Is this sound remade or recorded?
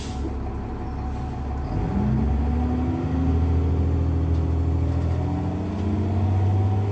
recorded